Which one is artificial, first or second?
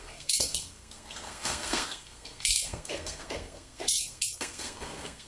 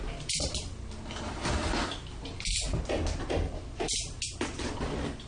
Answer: first